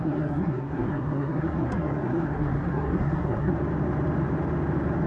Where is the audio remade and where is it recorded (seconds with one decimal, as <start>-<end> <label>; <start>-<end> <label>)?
0.0-3.5 remade; 3.5-5.1 recorded